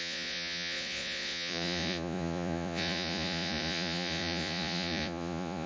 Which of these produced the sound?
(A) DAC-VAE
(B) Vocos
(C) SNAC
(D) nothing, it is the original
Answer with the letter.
B